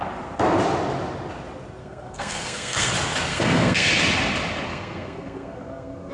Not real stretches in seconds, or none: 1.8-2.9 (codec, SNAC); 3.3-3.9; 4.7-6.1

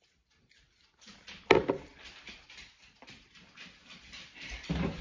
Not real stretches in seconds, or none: none

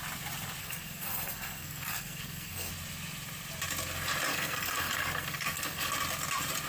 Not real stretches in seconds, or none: 0.6-2.7 (codec, SNAC); 4.3-5.9

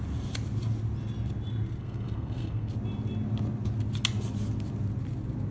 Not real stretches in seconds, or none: 1.8-2.7 (codec, SNAC)